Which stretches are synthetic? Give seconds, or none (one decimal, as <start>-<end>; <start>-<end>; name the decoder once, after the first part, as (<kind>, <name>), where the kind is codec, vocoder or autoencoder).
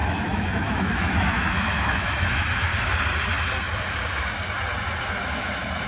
0.0-2.7 (autoencoder, DAC-VAE); 5.0-5.9